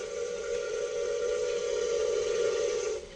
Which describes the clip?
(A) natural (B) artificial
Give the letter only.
B